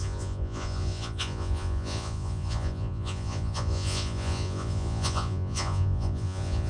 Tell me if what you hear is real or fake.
fake